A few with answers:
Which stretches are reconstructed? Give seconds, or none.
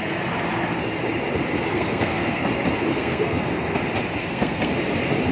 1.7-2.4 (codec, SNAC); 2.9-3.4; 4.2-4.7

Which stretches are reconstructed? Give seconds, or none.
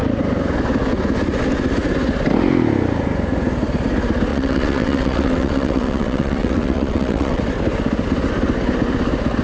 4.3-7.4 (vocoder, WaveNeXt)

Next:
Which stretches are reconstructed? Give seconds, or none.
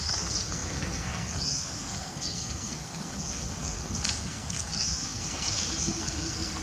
0.0-6.6 (codec, SNAC)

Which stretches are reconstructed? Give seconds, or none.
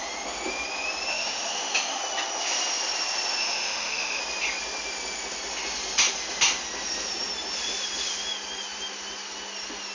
1.1-2.0 (autoencoder, DAC-VAE); 3.4-4.2